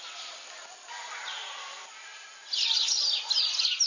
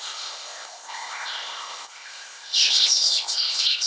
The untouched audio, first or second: first